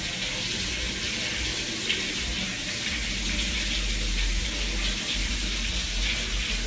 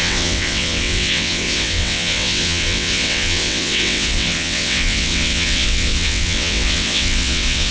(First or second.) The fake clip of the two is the second